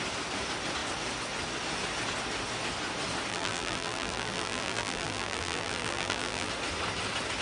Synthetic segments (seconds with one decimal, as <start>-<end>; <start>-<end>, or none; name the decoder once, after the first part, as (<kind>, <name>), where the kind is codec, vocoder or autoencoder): 3.3-6.5 (vocoder, BigVGAN v2)